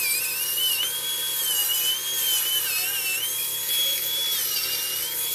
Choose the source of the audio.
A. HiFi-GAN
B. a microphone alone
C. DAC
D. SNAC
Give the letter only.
B